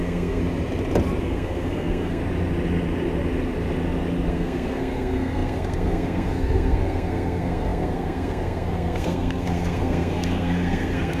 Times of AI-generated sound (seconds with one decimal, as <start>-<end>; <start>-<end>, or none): 0.0-0.4; 1.2-2.2; 4.3-11.2